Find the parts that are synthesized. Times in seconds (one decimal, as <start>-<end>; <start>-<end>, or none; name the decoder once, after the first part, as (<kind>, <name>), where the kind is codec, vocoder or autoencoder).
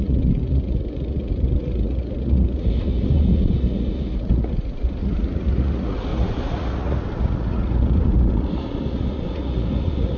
0.0-10.2 (vocoder, Vocos)